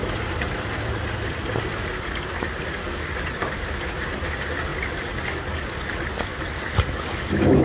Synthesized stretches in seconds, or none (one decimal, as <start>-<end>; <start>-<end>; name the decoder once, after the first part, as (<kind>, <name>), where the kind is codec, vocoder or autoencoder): none